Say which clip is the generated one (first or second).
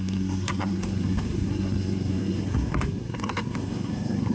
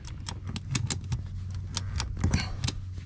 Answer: first